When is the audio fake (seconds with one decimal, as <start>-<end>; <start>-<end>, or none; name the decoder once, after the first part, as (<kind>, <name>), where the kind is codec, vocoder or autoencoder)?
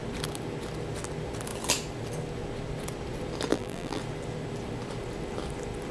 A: 3.5-4.0 (vocoder, BigVGAN v2)